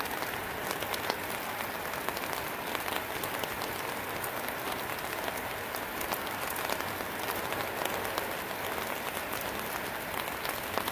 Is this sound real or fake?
real